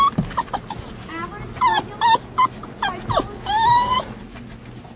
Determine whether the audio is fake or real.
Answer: real